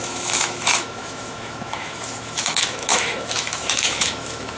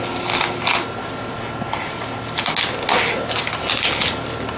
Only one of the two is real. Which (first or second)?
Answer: second